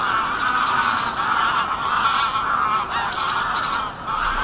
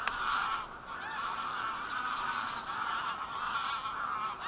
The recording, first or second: first